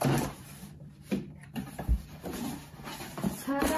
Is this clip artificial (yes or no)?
yes